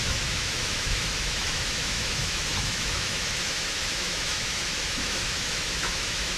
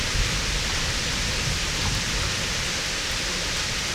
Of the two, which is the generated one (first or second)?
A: first